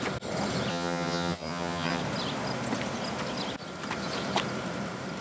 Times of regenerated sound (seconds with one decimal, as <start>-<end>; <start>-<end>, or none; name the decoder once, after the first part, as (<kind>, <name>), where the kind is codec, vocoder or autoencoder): 0.7-2.0 (vocoder, HiFi-GAN)